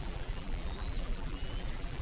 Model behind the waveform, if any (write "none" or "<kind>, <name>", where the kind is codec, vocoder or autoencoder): vocoder, BigVGAN v2